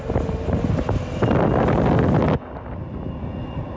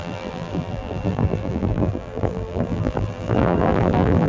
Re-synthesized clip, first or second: second